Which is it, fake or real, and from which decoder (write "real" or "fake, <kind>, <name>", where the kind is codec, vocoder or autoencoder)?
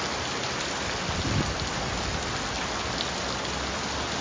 real